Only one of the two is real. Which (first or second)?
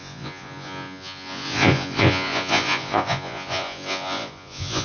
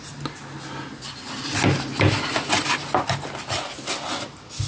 second